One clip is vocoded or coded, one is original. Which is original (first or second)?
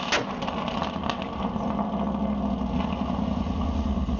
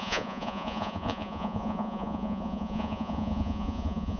first